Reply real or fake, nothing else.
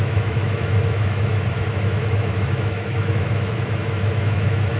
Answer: fake